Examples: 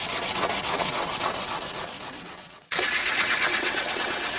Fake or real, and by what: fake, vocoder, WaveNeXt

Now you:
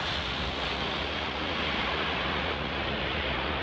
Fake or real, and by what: fake, vocoder, Vocos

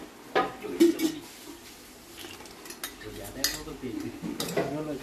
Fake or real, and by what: real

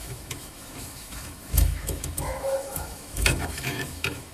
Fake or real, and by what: fake, autoencoder, DAC-VAE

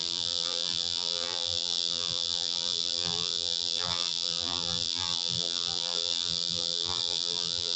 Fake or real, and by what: fake, vocoder, BigVGAN v2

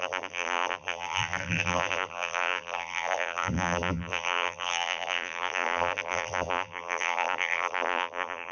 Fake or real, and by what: fake, vocoder, BigVGAN v2